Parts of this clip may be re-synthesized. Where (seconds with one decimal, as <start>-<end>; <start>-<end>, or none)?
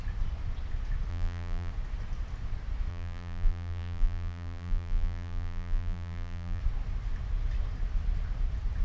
1.1-1.7; 2.9-6.6